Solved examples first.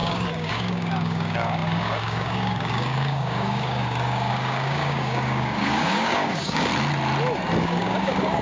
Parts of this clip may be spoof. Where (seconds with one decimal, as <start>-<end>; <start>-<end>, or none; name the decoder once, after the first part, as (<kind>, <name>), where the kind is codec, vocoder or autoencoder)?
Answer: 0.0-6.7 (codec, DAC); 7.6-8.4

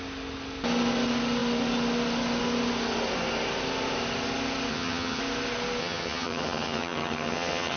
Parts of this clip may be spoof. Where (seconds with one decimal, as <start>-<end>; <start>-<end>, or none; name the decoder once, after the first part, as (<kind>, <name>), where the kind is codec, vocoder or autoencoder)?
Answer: 4.7-5.2 (vocoder, HiFi-GAN); 5.8-7.8

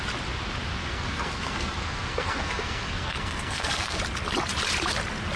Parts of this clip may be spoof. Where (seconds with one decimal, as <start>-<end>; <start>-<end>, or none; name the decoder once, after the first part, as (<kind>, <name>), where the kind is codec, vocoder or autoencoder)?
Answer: 0.8-4.0 (codec, SNAC)

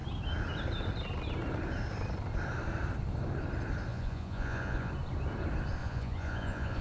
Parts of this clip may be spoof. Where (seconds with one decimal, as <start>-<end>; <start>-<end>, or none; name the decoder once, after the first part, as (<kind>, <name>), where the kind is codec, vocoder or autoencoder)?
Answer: 3.9-4.9 (vocoder, Vocos); 5.8-6.8